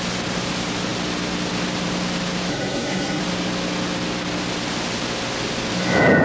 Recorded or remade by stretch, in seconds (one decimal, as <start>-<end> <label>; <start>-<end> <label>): 0.0-2.5 recorded; 2.5-3.2 remade; 3.2-6.2 recorded